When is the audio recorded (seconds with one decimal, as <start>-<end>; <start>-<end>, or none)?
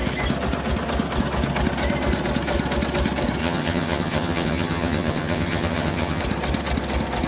0.0-3.4; 6.2-7.3